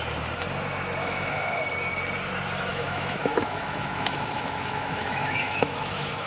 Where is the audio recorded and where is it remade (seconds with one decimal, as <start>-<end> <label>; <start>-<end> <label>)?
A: 0.0-1.0 recorded; 1.0-1.6 remade; 1.6-2.7 recorded; 2.7-6.3 remade